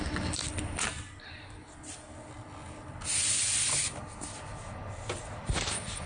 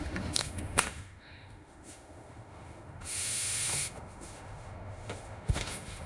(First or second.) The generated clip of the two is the second